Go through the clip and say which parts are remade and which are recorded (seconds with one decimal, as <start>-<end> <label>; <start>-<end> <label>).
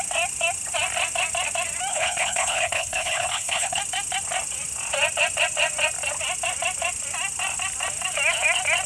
0.0-1.9 recorded; 1.9-3.8 remade; 3.8-8.9 recorded